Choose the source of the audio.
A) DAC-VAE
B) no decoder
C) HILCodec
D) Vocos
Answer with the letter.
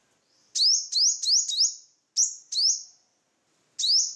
B